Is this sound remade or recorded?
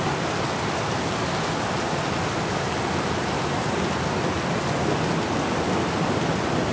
recorded